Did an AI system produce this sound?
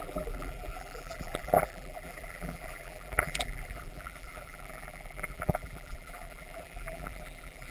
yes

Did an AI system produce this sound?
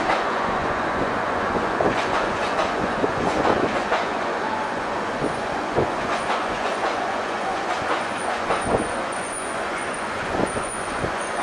yes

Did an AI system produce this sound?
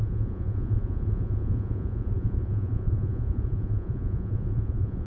yes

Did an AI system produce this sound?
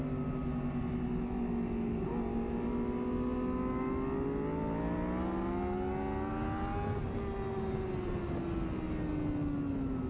no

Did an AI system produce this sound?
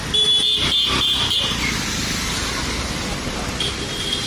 no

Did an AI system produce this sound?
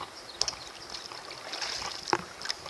no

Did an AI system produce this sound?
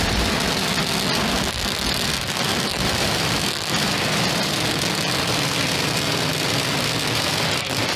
no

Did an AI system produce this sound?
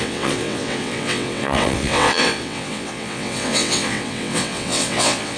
yes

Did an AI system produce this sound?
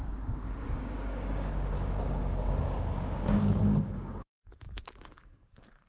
yes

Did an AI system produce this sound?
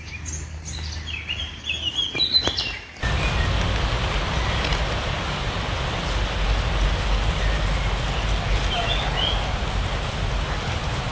no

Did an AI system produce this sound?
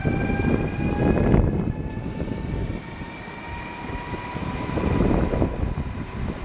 no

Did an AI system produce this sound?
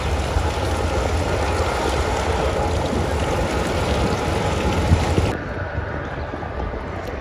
no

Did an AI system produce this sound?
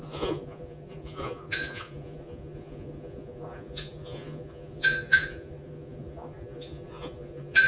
yes